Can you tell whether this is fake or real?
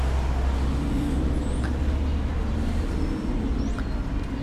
real